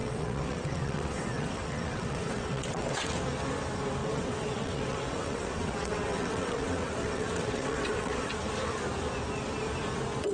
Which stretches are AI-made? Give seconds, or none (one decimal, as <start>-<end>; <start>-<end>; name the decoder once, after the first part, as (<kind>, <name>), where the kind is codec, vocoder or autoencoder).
0.0-3.1 (vocoder, WaveNeXt); 4.0-8.3